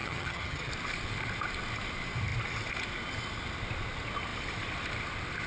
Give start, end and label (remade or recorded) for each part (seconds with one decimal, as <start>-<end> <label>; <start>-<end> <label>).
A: 0.0-0.7 remade; 0.7-5.5 recorded